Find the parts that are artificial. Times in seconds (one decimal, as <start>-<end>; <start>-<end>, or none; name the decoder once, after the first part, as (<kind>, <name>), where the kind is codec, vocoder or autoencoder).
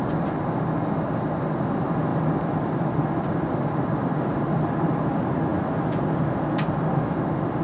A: 2.1-4.9 (vocoder, BigVGAN v2)